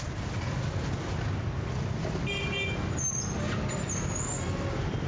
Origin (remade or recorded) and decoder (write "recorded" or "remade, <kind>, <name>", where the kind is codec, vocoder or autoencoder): recorded